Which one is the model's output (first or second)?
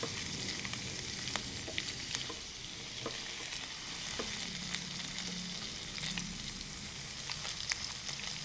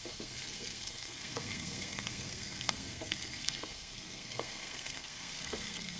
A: second